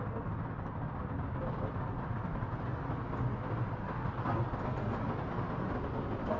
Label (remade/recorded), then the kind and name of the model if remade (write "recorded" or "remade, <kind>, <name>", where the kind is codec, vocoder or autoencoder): recorded